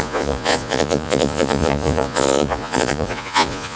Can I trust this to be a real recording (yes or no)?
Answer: no